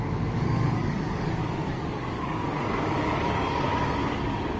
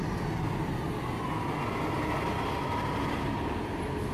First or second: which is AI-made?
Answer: first